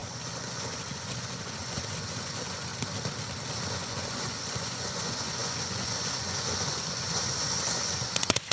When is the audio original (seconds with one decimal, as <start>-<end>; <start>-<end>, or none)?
2.7-3.7